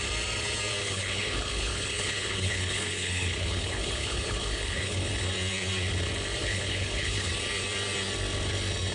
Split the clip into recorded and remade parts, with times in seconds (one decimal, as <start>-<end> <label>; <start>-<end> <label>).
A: 0.0-0.8 recorded; 0.8-5.1 remade; 5.1-6.4 recorded; 6.4-7.3 remade; 7.3-8.9 recorded